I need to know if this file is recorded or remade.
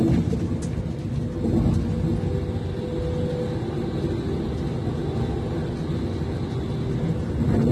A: recorded